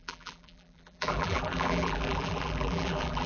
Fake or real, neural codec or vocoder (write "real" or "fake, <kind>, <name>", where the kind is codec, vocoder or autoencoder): fake, vocoder, BigVGAN v2